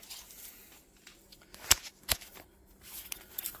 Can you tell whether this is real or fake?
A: real